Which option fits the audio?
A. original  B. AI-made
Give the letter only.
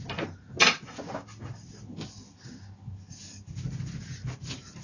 A